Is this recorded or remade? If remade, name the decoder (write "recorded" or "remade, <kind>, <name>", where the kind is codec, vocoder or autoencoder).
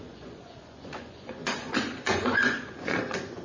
remade, vocoder, Vocos